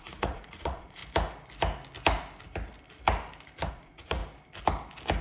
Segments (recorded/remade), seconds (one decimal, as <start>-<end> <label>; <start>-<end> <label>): 0.0-1.0 remade; 1.0-3.7 recorded; 3.7-4.2 remade; 4.2-5.2 recorded